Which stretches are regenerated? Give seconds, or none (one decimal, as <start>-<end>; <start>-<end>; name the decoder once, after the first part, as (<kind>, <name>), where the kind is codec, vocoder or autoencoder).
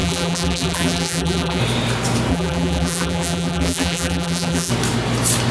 0.0-1.6 (vocoder, BigVGAN v2); 2.3-4.7